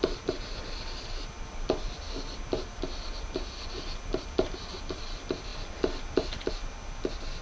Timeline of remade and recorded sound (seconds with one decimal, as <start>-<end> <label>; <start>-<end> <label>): 0.0-7.4 recorded

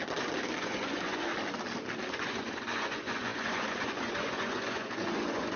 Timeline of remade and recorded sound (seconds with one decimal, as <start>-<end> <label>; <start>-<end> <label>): 0.0-0.6 recorded; 0.6-1.3 remade; 1.3-2.2 recorded; 2.2-5.6 remade

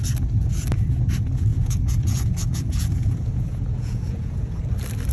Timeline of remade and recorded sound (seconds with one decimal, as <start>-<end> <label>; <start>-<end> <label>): 0.0-1.5 recorded; 1.5-4.6 remade; 4.6-5.1 recorded

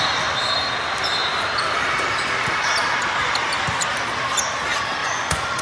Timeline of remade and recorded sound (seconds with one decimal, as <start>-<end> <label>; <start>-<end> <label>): 0.0-5.0 recorded; 5.0-5.6 remade

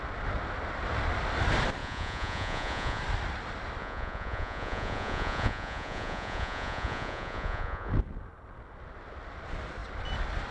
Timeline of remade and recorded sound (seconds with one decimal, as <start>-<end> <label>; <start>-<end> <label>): 0.0-1.8 recorded; 1.8-3.0 remade; 3.0-3.8 recorded; 3.8-7.9 remade; 7.9-10.5 recorded

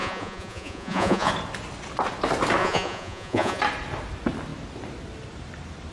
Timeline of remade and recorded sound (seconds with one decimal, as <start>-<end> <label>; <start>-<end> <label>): 0.0-1.3 remade; 1.3-2.6 recorded; 2.6-3.6 remade; 3.6-5.9 recorded